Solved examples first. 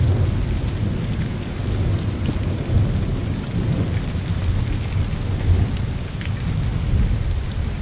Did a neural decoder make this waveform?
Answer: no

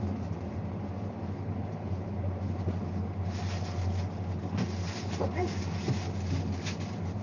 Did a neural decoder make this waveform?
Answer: no